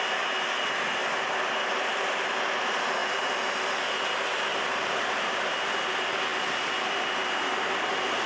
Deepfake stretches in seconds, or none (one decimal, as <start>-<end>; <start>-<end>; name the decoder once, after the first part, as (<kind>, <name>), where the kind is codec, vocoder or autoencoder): 1.0-2.3 (vocoder, BigVGAN v2); 4.5-5.2